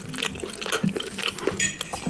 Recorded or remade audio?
recorded